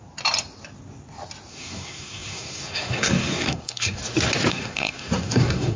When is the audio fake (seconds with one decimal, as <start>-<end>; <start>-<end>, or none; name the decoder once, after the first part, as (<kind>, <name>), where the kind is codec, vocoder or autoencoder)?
1.5-4.0 (codec, SNAC); 4.5-5.8